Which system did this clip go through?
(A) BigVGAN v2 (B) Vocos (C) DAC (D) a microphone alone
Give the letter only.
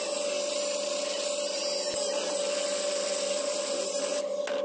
D